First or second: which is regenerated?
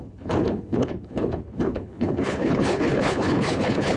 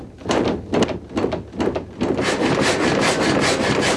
first